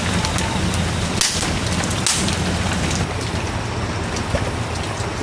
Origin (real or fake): real